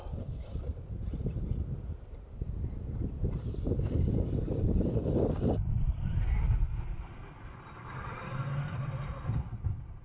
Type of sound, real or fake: real